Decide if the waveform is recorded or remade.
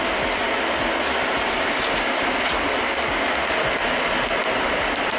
recorded